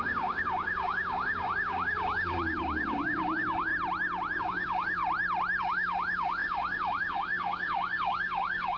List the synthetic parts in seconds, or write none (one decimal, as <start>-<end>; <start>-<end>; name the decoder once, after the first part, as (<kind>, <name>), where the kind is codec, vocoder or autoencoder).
0.0-3.7 (codec, DAC); 4.4-5.0; 5.6-8.8